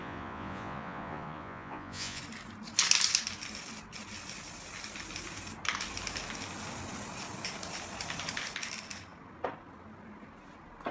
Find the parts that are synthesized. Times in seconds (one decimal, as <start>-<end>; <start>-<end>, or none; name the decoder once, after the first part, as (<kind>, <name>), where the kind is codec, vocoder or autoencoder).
0.0-2.2 (vocoder, Vocos)